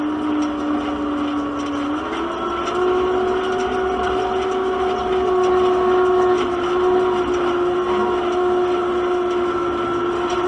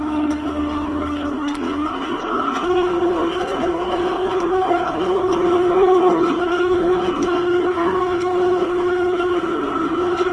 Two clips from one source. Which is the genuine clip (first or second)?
first